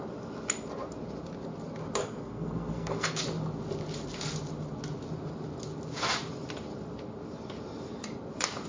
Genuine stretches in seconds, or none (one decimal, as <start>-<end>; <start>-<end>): 0.0-2.0; 3.2-8.7